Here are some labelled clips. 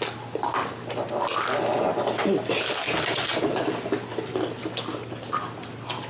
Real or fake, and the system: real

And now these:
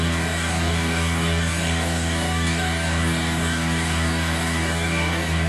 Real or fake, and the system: fake, codec, DAC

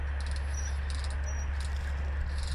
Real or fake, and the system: real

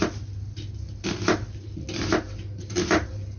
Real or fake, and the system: real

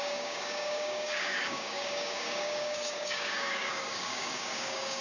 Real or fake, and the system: fake, codec, DAC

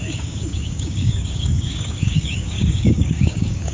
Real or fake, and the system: fake, codec, DAC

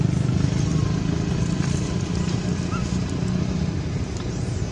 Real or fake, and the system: real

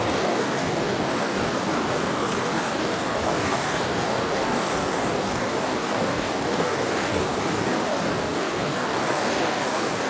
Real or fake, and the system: fake, codec, DAC